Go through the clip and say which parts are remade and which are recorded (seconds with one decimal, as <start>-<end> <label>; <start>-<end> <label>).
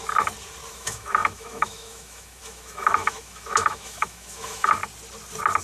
0.0-0.7 recorded; 0.7-4.8 remade; 4.8-5.6 recorded